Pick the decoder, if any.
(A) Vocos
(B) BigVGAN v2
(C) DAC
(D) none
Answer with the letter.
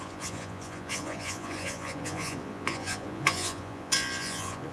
A